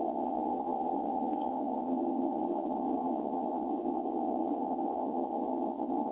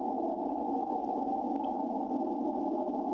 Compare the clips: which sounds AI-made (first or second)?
first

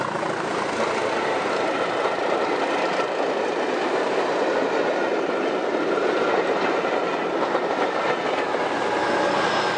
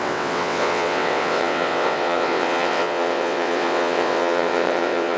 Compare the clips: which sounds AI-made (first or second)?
second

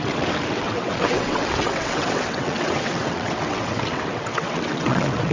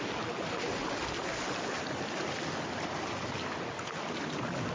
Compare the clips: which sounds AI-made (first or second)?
first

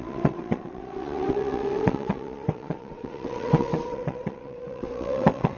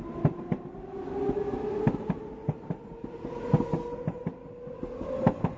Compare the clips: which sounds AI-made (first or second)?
first